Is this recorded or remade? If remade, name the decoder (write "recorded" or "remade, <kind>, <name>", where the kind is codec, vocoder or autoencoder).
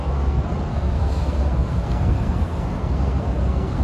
remade, codec, SNAC